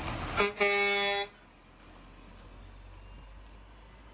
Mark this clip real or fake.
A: real